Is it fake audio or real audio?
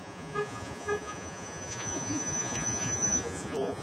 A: fake